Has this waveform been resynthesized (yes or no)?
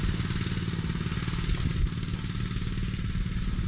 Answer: no